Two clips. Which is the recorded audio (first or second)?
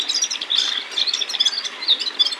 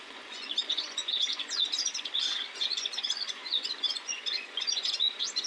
first